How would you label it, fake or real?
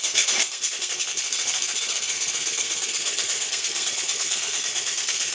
fake